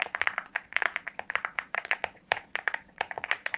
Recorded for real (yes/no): no